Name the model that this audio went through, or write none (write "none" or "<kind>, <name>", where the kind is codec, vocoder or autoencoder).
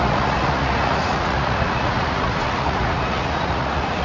vocoder, Vocos